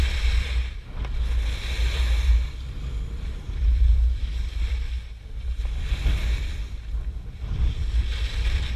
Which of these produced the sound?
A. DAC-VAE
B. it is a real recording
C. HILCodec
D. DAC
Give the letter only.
B